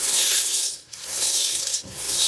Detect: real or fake fake